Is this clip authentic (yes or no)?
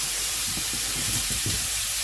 no